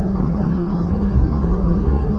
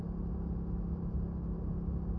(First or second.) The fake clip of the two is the first